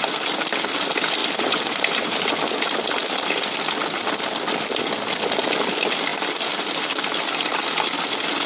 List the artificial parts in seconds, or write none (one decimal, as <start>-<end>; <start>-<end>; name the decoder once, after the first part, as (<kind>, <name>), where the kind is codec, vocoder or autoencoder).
1.2-2.3 (vocoder, BigVGAN v2)